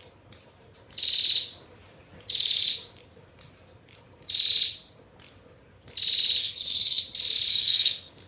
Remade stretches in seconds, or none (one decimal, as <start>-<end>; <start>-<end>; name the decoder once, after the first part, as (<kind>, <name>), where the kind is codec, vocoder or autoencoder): 6.4-7.0 (codec, SNAC); 7.5-8.3